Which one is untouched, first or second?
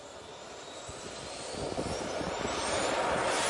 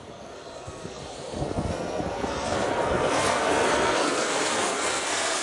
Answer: first